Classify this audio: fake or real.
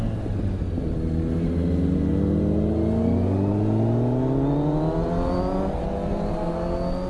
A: real